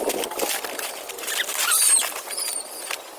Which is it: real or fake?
real